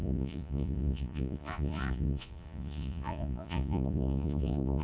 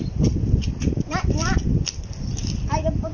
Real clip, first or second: second